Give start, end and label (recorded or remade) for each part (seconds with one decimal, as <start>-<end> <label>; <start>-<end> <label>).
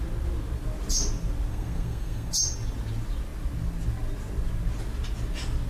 0.0-1.5 recorded; 1.5-2.3 remade; 2.3-5.7 recorded